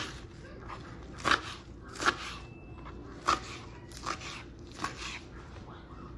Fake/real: real